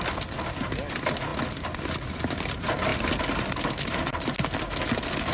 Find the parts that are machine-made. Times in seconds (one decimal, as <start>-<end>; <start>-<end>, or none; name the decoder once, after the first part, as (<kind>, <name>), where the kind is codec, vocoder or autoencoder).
none